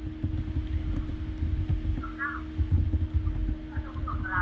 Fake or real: real